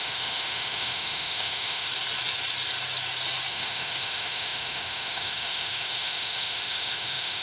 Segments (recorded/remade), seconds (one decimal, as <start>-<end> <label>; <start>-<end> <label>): 0.0-1.9 remade; 1.9-3.5 recorded; 3.5-7.4 remade

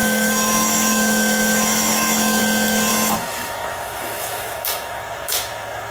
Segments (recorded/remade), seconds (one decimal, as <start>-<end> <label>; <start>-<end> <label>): 0.0-2.4 remade; 2.4-2.9 recorded; 2.9-5.9 remade

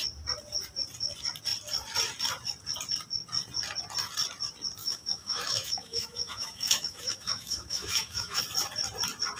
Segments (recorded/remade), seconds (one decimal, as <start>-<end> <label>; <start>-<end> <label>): 0.0-4.8 recorded; 4.8-8.4 remade; 8.4-9.4 recorded

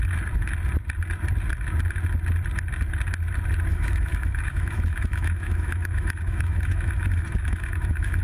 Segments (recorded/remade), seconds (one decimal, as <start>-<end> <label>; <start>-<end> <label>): 0.0-3.7 recorded; 3.7-8.2 remade

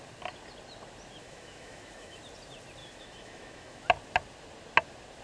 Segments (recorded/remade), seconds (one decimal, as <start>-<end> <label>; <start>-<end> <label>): 0.0-1.2 recorded; 1.2-2.2 remade; 2.2-2.8 recorded; 2.8-3.8 remade; 3.8-5.2 recorded

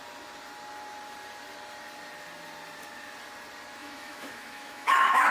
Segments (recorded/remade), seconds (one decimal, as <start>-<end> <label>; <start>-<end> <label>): 0.0-3.8 recorded; 3.8-5.3 remade